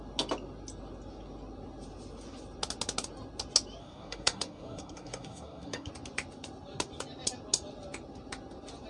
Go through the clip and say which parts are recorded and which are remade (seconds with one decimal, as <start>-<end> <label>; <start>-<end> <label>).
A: 0.0-3.8 recorded; 3.8-5.9 remade; 5.9-8.9 recorded